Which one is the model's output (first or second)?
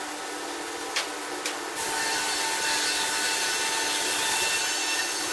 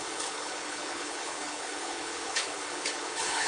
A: second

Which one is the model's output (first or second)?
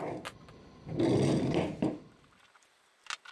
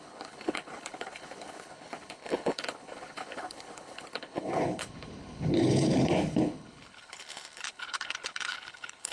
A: second